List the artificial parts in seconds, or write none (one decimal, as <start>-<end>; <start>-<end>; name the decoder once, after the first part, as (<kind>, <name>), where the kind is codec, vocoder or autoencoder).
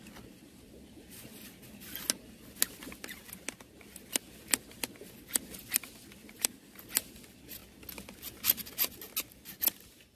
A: none